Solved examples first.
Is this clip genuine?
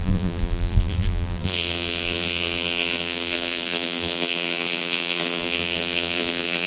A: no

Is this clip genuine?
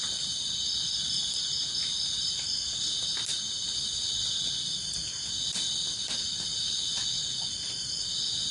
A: yes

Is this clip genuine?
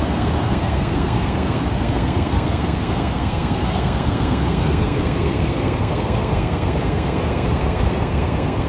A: no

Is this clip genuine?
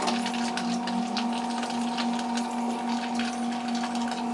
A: yes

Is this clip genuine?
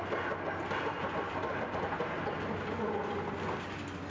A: yes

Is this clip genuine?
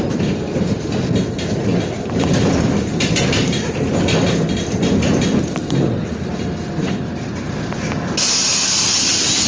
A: yes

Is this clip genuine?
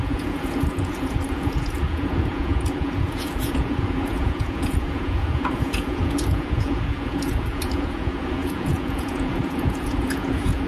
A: no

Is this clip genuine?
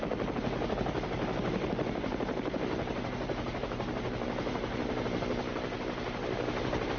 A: no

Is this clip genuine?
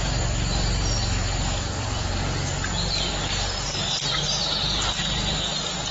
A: yes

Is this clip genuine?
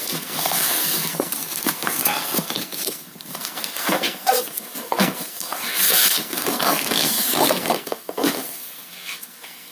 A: no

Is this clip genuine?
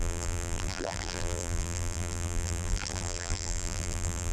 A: no